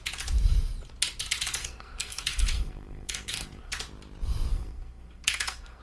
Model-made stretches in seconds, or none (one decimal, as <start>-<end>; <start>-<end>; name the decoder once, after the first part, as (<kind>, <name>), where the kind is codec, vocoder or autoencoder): 1.6-3.7 (codec, SNAC); 4.5-5.8